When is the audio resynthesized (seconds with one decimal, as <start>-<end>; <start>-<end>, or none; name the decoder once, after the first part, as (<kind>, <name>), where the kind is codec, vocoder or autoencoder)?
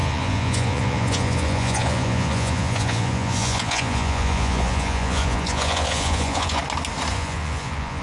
0.0-6.6 (vocoder, Vocos); 7.1-8.0